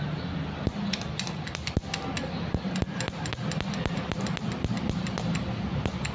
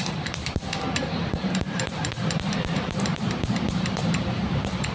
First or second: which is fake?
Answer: second